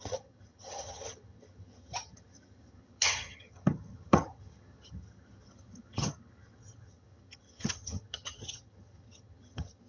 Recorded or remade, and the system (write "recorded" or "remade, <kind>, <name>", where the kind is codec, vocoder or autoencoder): remade, vocoder, HiFi-GAN